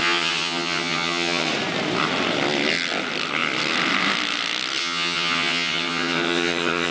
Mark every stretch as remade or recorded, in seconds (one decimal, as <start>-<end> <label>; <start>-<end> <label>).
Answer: 0.0-1.5 remade; 1.5-4.8 recorded; 4.8-6.9 remade